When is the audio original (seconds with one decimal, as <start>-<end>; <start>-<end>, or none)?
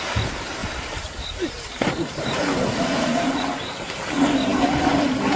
0.0-0.6; 3.4-5.4